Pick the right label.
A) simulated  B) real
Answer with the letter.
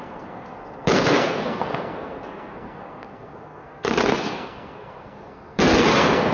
A